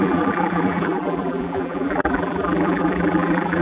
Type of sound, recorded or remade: remade